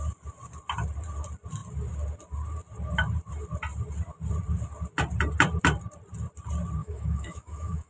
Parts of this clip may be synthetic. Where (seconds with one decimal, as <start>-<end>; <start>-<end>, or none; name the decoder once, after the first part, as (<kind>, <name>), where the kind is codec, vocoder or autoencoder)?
6.8-7.9 (autoencoder, DAC-VAE)